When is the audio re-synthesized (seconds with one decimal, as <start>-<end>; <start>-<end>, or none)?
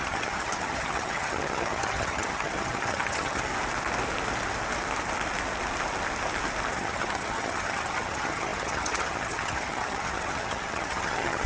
0.0-3.5; 6.7-11.5